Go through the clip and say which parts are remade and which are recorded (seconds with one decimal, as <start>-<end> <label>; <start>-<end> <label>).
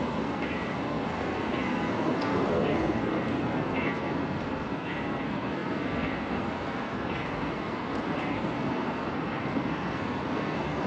0.0-10.9 remade